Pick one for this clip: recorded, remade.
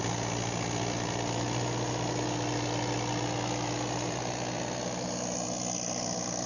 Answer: recorded